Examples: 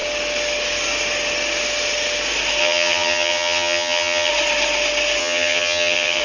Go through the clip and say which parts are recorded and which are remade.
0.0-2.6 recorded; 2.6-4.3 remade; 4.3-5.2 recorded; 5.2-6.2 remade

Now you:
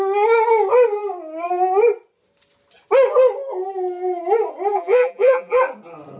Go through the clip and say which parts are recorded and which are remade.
0.0-4.7 recorded; 4.7-5.6 remade; 5.6-6.2 recorded

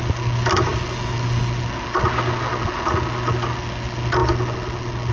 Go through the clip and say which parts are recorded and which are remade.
0.0-5.1 recorded

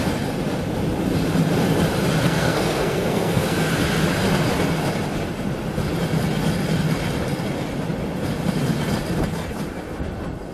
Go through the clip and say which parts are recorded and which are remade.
0.0-2.2 recorded; 2.2-3.7 remade; 3.7-10.5 recorded

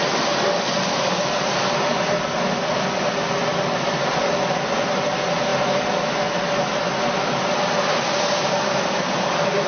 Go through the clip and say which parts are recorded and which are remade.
0.0-9.7 recorded

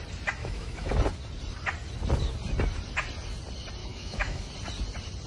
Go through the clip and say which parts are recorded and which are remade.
0.0-0.4 recorded; 0.4-0.9 remade; 0.9-3.8 recorded; 3.8-4.5 remade; 4.5-5.3 recorded

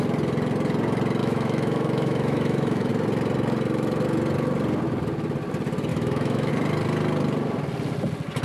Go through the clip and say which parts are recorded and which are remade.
0.0-1.2 recorded; 1.2-2.9 remade; 2.9-5.9 recorded; 5.9-6.5 remade; 6.5-8.4 recorded